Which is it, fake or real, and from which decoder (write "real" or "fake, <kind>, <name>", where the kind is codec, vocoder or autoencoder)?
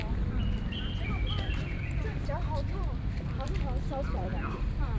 fake, vocoder, BigVGAN v2